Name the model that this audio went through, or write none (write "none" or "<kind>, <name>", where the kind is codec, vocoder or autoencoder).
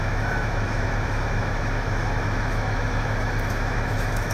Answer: autoencoder, DAC-VAE